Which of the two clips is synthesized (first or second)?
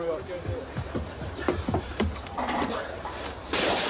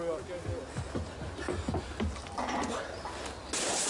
first